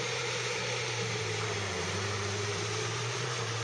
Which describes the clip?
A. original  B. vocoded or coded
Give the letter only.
B